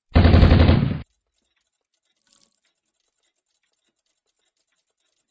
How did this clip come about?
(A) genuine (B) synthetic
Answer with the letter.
A